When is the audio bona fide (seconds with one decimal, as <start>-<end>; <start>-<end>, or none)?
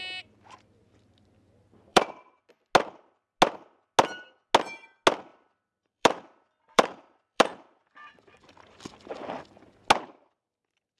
0.0-1.9; 2.5-5.3; 9.6-11.0